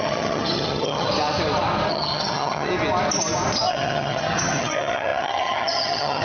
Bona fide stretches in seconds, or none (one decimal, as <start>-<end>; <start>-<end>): 1.1-1.9; 2.7-3.7